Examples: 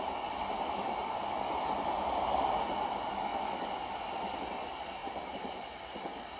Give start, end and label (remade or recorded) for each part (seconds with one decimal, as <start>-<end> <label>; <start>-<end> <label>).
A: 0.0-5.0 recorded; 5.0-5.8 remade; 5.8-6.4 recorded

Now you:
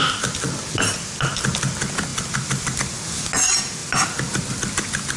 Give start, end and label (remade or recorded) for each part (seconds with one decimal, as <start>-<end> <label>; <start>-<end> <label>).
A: 0.0-5.2 recorded

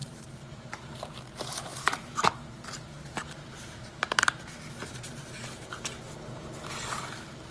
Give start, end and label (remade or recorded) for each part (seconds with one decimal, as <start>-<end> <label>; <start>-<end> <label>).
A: 0.0-0.8 remade; 0.8-1.7 recorded; 1.7-6.2 remade; 6.2-7.5 recorded

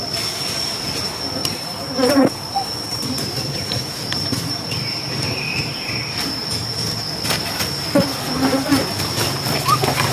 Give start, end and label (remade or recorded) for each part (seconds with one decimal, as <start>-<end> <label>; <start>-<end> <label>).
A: 0.0-1.4 recorded; 1.4-2.5 remade; 2.5-2.9 recorded; 2.9-6.4 remade; 6.4-10.1 recorded

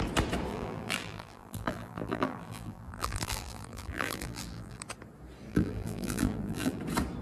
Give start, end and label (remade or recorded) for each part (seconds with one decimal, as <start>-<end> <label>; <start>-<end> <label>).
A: 0.0-0.5 recorded; 0.5-4.8 remade; 4.8-5.5 recorded; 5.5-6.8 remade; 6.8-7.2 recorded

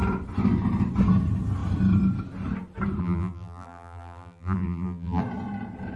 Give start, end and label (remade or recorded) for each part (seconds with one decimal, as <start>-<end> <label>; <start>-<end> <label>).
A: 0.0-3.0 recorded; 3.0-5.2 remade; 5.2-6.0 recorded

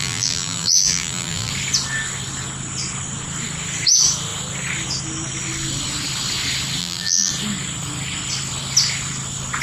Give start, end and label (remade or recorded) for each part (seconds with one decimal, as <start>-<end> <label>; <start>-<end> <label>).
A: 0.0-1.5 remade; 1.5-6.8 recorded; 6.8-7.3 remade; 7.3-9.6 recorded

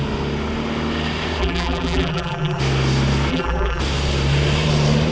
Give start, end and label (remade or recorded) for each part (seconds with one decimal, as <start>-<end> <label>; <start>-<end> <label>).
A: 0.0-1.4 recorded; 1.4-2.6 remade; 2.6-3.3 recorded; 3.3-3.8 remade; 3.8-5.1 recorded